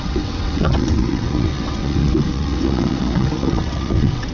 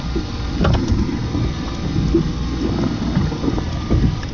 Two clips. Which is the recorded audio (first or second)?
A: second